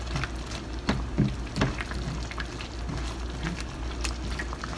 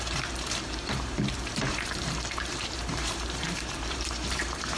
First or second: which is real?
first